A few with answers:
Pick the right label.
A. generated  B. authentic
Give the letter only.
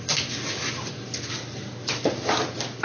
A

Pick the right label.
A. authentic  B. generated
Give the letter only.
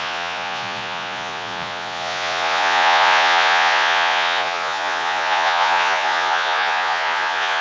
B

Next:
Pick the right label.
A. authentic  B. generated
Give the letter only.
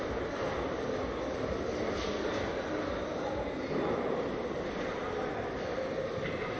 A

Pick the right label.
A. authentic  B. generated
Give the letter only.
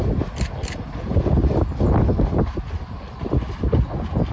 A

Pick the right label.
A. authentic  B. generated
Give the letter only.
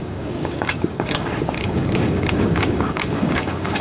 B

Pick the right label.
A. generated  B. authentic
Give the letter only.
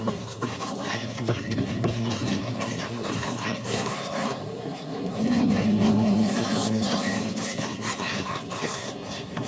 A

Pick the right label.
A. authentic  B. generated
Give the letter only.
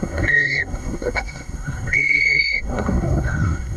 B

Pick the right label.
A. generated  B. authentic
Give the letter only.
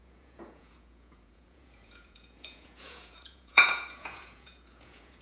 A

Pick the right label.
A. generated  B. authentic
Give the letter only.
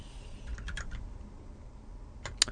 B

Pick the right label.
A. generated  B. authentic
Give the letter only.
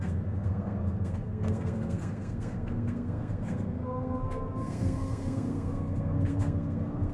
A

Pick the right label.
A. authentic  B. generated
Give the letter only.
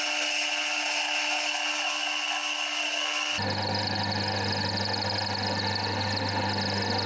A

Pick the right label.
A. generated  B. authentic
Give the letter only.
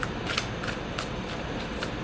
B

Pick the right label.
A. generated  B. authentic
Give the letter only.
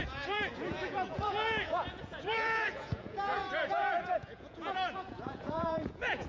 A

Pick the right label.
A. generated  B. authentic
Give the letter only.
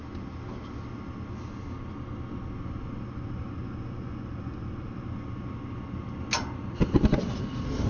B